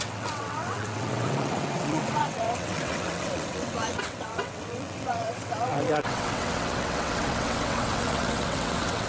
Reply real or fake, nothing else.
fake